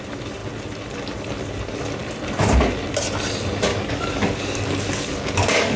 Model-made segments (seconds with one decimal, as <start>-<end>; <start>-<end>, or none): 3.7-5.8